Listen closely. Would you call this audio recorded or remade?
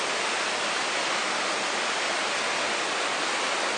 recorded